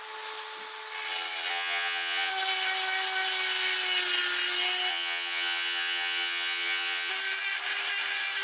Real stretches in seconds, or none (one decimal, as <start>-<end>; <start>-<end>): 0.0-1.5; 2.3-4.9; 7.1-8.4